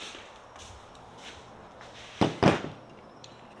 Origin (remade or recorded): recorded